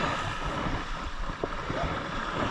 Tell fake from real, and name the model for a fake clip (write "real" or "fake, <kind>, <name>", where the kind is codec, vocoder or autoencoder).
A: fake, vocoder, BigVGAN v2